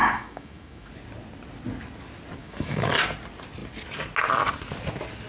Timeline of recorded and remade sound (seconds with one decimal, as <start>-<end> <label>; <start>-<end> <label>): 0.0-0.9 remade; 0.9-2.4 recorded; 2.4-2.9 remade; 2.9-5.3 recorded